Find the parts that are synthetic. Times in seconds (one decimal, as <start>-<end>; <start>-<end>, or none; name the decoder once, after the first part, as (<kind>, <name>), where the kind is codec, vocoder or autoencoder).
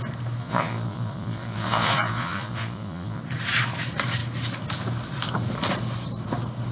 0.4-3.2 (vocoder, Vocos)